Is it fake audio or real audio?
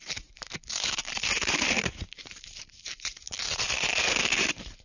fake